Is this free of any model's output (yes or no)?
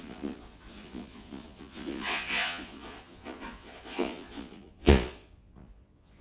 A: no